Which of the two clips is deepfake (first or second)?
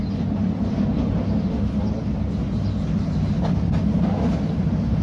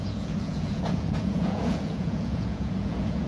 second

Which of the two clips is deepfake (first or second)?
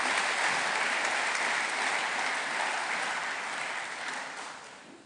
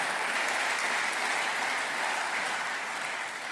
first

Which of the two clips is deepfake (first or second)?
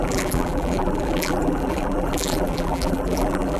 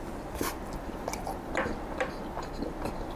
first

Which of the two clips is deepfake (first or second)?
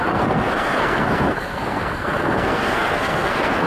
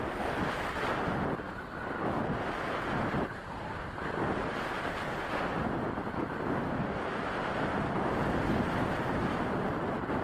first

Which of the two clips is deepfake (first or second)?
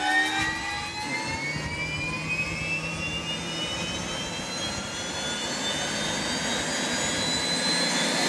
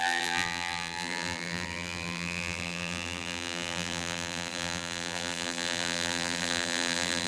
second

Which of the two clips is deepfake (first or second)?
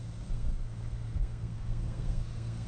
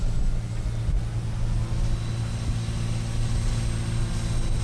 first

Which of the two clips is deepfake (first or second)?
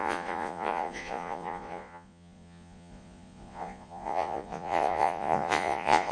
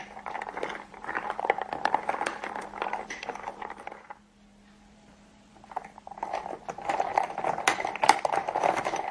first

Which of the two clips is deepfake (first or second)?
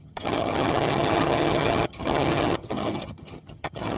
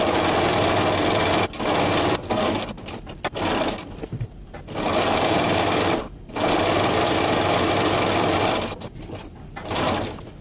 first